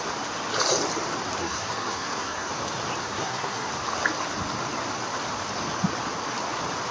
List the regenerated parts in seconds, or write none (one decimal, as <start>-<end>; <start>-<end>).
1.4-2.5; 3.0-3.7